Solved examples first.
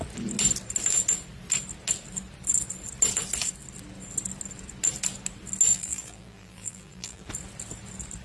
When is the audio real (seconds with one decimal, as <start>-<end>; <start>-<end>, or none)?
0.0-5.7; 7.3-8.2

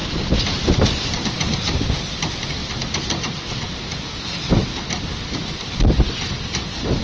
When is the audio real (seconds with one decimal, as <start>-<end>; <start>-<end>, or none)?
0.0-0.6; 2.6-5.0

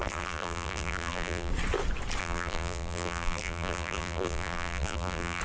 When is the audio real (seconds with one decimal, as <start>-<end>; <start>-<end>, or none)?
1.5-2.2